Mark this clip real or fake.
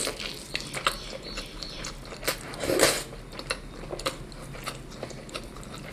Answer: real